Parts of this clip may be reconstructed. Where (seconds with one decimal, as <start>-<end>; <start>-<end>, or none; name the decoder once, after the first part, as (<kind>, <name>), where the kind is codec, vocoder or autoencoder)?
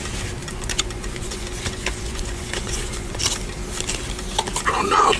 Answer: 0.4-3.2 (vocoder, Vocos)